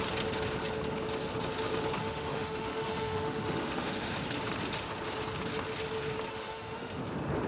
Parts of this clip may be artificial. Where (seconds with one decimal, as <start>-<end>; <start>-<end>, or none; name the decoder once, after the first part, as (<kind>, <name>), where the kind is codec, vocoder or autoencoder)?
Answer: 2.0-4.1 (autoencoder, DAC-VAE); 6.3-7.0